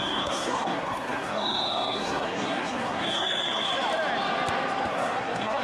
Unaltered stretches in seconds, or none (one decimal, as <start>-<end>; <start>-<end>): 3.7-4.9